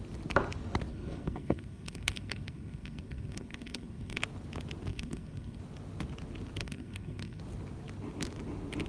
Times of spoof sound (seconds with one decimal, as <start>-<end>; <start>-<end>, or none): 0.9-4.2; 4.9-5.6; 6.6-7.4